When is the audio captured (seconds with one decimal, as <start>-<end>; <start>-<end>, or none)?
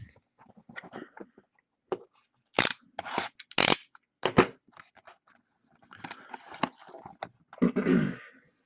0.0-7.9